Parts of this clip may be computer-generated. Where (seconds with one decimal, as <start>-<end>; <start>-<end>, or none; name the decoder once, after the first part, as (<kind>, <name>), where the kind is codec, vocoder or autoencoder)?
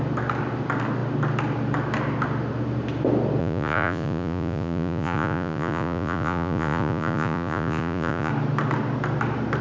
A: 3.4-8.3 (vocoder, Vocos)